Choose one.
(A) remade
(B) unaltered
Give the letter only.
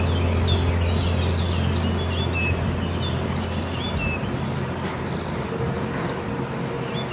B